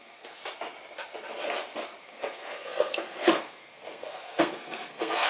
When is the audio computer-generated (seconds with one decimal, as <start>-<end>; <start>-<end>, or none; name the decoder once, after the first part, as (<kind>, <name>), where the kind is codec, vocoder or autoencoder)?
0.0-0.4 (codec, SNAC); 2.0-5.3